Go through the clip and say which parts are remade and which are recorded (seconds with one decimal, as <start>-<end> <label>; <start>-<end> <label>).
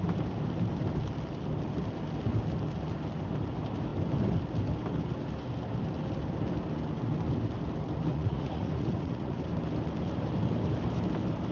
0.0-8.1 recorded; 8.1-9.4 remade; 9.4-11.5 recorded